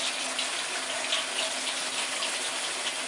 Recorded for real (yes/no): yes